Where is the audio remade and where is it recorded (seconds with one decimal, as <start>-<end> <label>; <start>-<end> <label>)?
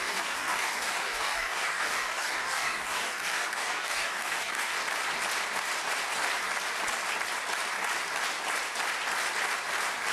0.0-4.7 remade; 4.7-10.1 recorded